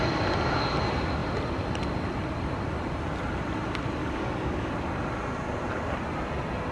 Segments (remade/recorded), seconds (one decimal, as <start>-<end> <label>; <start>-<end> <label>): 0.0-4.0 recorded; 4.0-4.7 remade; 4.7-6.7 recorded